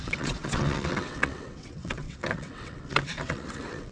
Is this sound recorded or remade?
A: remade